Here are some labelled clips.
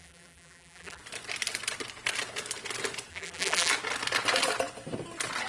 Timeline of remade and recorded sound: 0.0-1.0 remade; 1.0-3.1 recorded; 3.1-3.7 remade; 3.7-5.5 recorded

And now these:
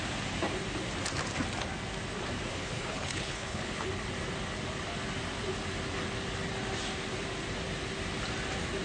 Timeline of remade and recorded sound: 0.0-2.5 recorded; 2.5-3.9 remade; 3.9-8.8 recorded

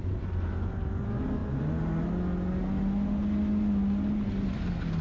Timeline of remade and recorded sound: 0.0-5.0 recorded

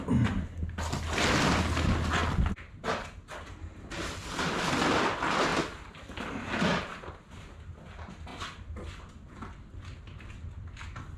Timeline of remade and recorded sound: 0.0-11.2 recorded